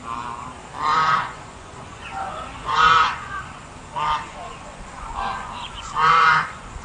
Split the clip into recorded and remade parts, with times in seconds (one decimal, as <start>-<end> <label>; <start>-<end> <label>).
0.0-0.9 recorded; 0.9-3.8 remade; 3.8-4.3 recorded; 4.3-6.8 remade